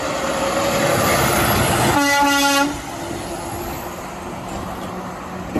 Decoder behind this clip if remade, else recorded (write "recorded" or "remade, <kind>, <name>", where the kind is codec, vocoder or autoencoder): recorded